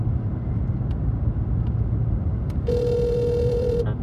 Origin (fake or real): fake